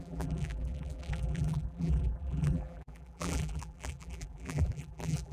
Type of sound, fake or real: fake